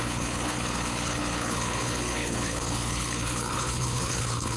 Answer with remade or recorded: remade